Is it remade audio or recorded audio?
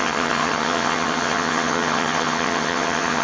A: remade